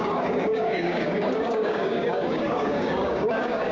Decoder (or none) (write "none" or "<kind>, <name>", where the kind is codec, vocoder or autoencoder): codec, DAC